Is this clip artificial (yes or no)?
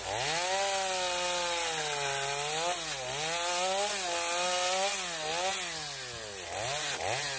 no